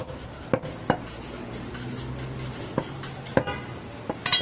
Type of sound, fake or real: real